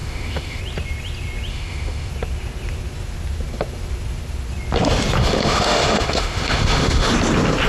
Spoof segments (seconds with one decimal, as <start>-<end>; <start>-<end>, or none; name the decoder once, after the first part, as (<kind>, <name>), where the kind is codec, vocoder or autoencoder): 0.0-0.6 (autoencoder, DAC-VAE); 1.5-2.1; 5.2-7.1